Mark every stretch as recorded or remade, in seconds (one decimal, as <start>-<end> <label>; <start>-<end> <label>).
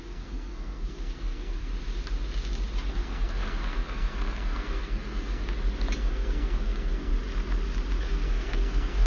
0.0-1.7 remade; 1.7-2.9 recorded; 2.9-5.4 remade; 5.4-6.0 recorded; 6.0-7.1 remade; 7.1-8.0 recorded; 8.0-9.1 remade